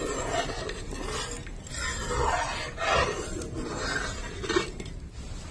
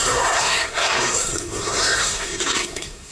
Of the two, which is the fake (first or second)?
second